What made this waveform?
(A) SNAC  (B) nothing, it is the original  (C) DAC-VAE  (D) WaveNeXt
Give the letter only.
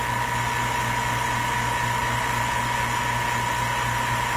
B